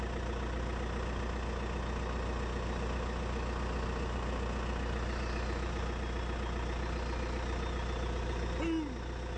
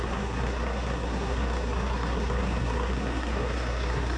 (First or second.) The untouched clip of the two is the first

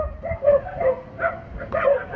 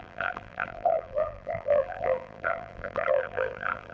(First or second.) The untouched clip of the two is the first